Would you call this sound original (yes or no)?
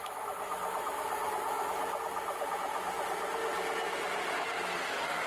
yes